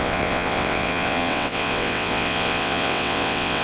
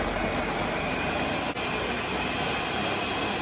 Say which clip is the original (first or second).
second